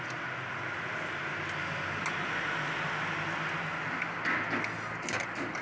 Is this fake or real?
real